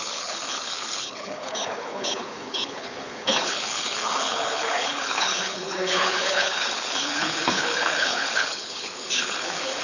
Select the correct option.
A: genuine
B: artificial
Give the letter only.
B